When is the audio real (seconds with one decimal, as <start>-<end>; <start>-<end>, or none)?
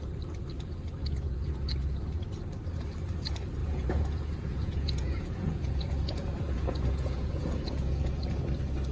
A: 0.0-1.0; 2.2-3.6; 8.3-8.9